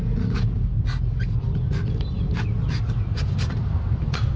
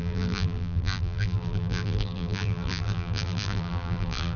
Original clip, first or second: first